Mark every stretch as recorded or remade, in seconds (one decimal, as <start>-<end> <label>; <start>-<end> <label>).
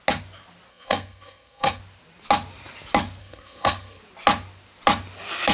0.0-0.7 recorded; 0.7-1.8 remade; 1.8-3.2 recorded; 3.2-4.0 remade; 4.0-5.5 recorded